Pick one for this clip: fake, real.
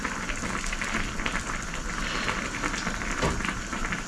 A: real